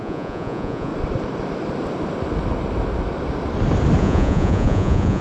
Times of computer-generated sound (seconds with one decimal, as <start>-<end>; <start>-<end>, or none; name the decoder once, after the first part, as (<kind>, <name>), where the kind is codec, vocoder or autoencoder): 0.0-0.9 (vocoder, Vocos); 4.0-5.2